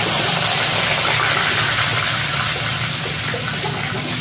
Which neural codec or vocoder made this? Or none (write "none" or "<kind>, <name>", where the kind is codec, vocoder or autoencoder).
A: none